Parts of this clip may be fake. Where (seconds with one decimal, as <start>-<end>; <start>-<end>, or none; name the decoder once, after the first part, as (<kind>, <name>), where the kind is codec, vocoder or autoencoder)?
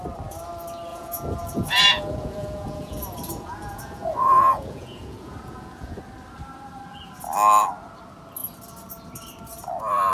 0.9-6.0 (vocoder, Vocos)